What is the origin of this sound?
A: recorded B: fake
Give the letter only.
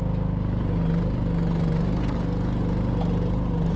A